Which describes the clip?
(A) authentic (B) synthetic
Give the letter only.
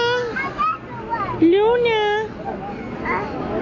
A